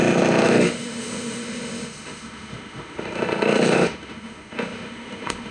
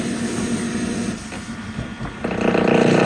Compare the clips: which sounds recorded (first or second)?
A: second